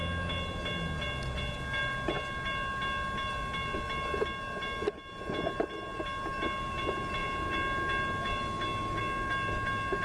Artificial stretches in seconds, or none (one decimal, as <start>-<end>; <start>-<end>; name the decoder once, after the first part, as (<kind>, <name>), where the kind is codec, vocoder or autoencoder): none